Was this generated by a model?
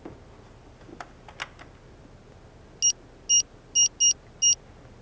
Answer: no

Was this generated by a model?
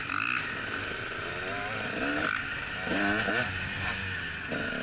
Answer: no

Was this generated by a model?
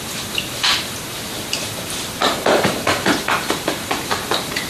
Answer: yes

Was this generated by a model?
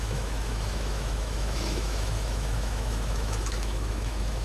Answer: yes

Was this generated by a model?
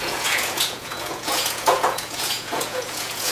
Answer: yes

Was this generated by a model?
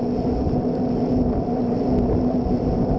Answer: no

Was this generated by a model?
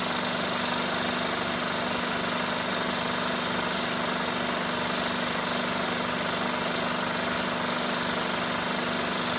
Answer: no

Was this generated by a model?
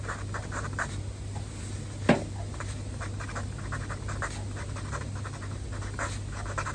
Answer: no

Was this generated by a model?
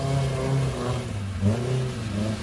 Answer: no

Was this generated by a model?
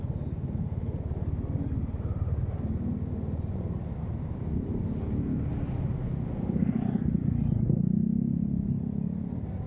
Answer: no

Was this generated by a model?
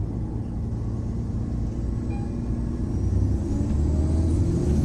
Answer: no